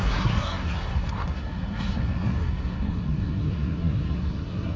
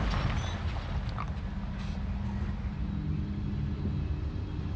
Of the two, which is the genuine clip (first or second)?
second